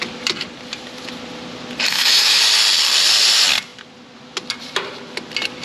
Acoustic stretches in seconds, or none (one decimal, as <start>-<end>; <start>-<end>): 0.0-1.9; 2.4-5.6